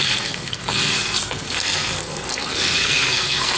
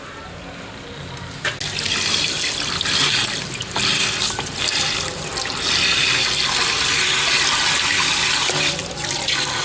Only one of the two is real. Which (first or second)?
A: second